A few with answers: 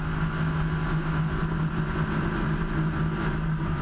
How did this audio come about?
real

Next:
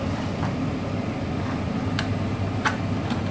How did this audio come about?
real